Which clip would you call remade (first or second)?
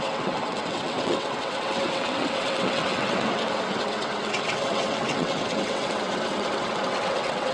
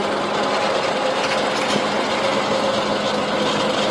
first